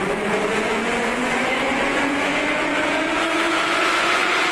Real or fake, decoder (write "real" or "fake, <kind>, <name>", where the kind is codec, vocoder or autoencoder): fake, vocoder, Vocos